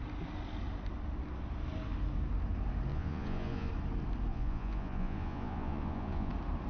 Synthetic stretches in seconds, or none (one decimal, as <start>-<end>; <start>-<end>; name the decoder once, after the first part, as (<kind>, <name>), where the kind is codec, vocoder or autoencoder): 2.9-3.7 (vocoder, Vocos); 4.3-6.3